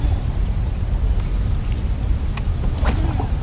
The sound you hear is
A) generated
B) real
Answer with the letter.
B